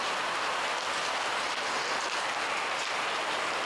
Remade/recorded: recorded